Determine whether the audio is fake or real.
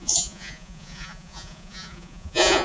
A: fake